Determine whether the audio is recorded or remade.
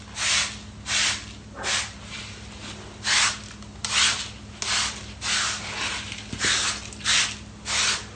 recorded